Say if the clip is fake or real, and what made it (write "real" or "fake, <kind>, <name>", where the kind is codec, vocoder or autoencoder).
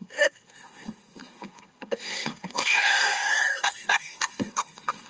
fake, codec, SNAC